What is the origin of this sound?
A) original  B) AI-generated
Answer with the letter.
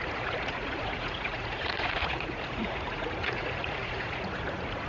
B